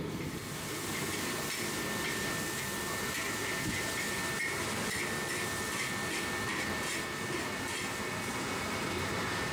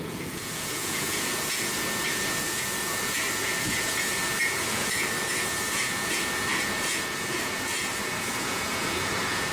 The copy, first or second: second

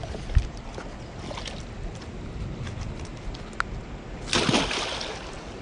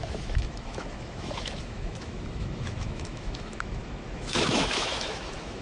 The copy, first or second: second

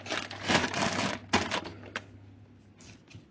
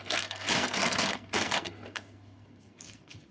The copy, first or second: second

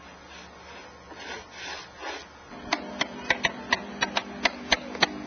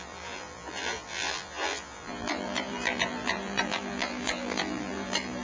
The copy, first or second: second